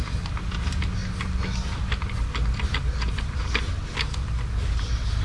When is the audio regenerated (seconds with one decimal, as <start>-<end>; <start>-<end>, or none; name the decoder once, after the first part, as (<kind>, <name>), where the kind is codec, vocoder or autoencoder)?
none